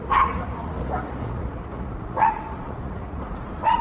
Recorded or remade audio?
remade